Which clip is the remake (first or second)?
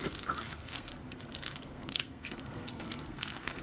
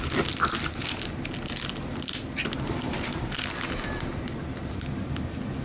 first